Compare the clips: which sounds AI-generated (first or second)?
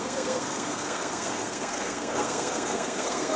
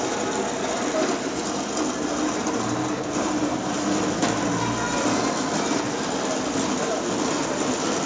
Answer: first